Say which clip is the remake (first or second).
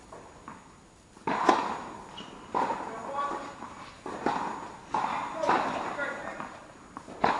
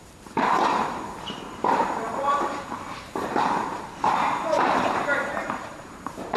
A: second